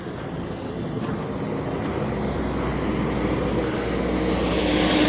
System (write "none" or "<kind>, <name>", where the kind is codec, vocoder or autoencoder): none